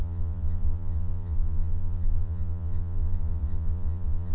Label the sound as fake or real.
fake